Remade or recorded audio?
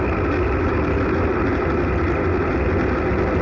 recorded